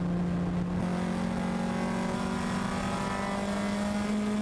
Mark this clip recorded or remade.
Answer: recorded